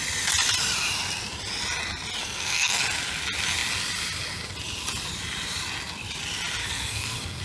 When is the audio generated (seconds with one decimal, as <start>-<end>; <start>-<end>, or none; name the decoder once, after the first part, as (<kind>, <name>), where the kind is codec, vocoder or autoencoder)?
2.2-2.8 (codec, SNAC); 6.6-7.4